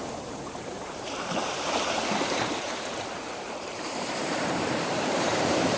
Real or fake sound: fake